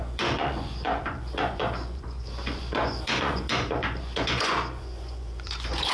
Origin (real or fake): fake